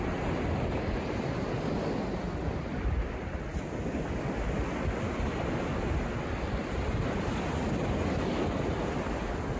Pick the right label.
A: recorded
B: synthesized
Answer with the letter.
A